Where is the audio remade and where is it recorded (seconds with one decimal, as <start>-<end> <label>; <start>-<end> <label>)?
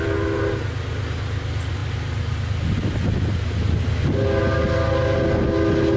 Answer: 0.0-6.0 recorded